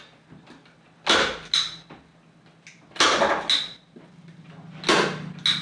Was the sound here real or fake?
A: real